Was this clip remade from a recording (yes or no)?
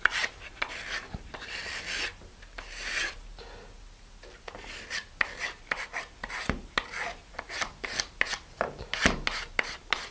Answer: no